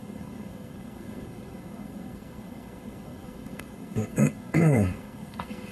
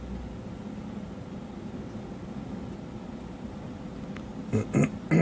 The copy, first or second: first